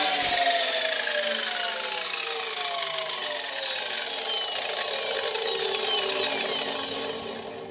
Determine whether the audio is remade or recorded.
recorded